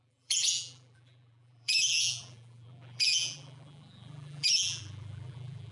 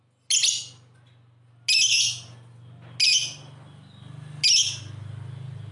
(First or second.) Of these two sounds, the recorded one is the second